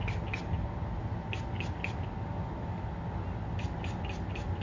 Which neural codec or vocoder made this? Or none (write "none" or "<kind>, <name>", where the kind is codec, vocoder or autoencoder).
none